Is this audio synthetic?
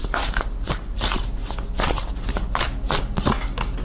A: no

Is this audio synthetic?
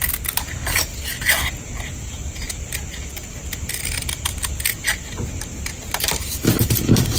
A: no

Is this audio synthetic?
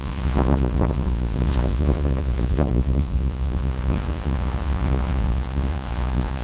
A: yes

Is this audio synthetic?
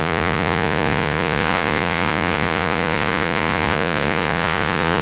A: yes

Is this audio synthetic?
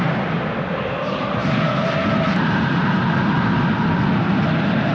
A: no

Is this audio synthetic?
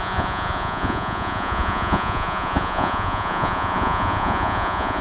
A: yes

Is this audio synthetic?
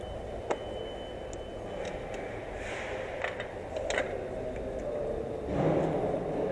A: no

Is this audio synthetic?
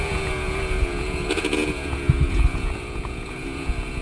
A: yes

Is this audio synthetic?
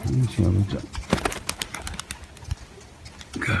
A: no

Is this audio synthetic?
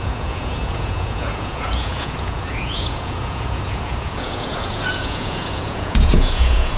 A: yes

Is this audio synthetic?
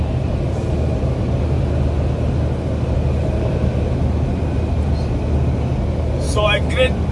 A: no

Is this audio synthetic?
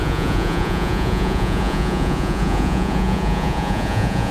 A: yes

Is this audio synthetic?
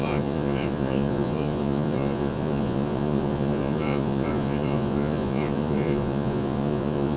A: yes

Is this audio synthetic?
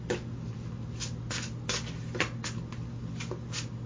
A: no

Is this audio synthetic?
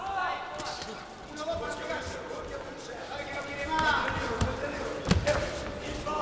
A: no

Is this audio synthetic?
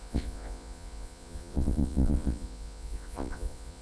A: yes